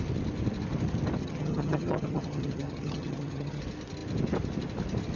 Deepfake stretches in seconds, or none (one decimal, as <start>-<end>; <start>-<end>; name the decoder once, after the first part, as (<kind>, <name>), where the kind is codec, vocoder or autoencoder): 1.2-3.6 (vocoder, HiFi-GAN)